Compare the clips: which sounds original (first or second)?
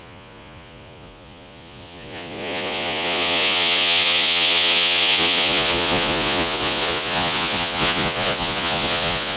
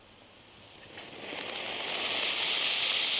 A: second